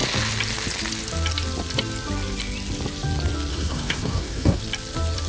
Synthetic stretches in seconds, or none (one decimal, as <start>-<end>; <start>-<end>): 3.5-4.6